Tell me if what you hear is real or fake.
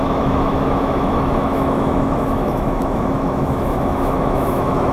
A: fake